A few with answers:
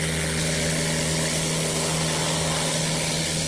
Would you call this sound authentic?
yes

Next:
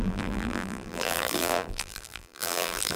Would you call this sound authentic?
no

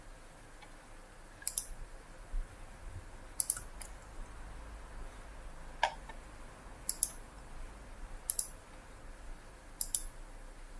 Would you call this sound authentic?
yes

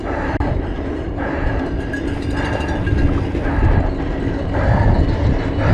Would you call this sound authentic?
yes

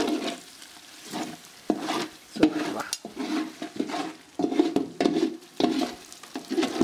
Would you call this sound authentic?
yes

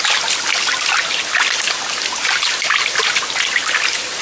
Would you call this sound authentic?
yes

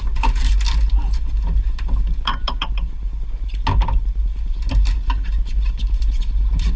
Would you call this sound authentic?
yes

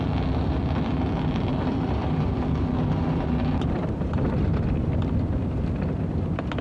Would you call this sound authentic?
no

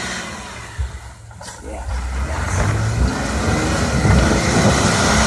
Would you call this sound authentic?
yes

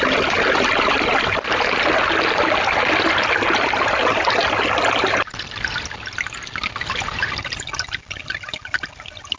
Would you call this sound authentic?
yes